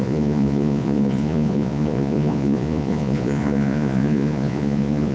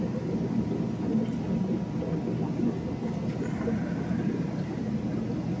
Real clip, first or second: second